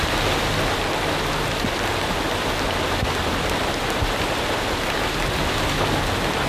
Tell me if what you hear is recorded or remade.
recorded